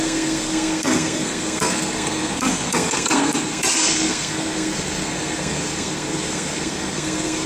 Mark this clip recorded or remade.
remade